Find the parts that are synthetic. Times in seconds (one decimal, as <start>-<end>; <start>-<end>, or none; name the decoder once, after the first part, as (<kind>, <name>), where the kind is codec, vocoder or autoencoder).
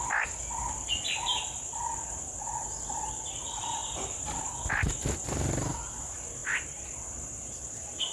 none